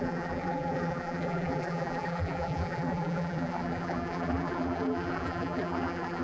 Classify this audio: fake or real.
fake